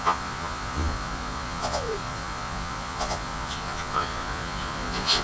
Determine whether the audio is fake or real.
fake